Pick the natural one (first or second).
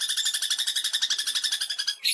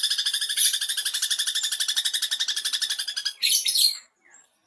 first